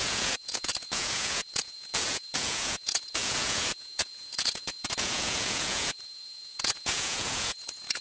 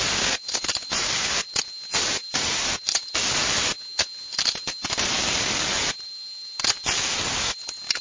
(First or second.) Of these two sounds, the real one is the second